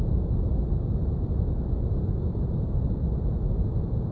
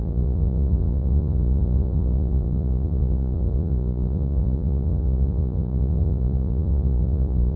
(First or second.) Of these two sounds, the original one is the first